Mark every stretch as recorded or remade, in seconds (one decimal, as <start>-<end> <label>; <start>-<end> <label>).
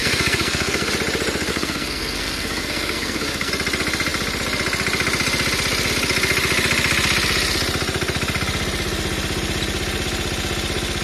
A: 0.0-0.9 remade; 0.9-1.5 recorded; 1.5-3.5 remade; 3.5-11.0 recorded